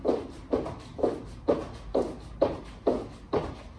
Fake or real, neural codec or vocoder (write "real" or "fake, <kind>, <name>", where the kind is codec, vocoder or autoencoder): real